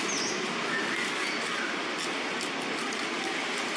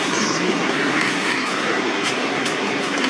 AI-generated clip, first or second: second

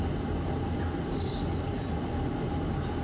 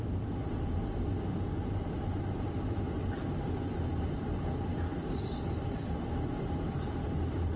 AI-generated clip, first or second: second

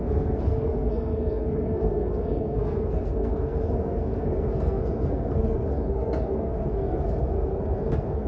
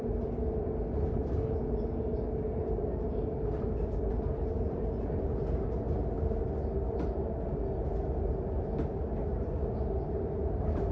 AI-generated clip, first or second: first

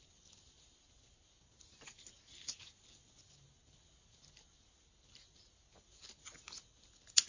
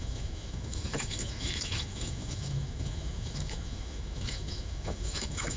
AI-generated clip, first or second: second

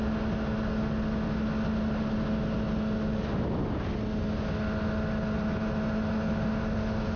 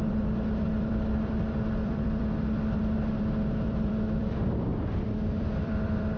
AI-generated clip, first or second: second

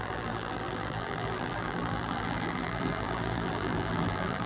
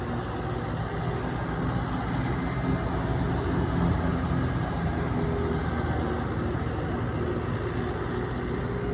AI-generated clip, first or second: first